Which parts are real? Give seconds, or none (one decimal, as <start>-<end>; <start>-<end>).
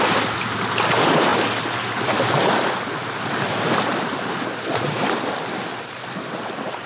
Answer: 0.0-6.9